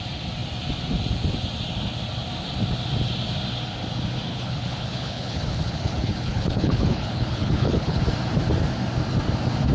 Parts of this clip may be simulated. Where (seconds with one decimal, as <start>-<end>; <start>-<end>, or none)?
4.3-8.0